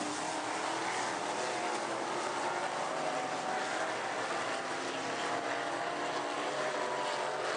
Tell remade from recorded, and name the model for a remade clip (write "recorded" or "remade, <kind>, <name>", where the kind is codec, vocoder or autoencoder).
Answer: recorded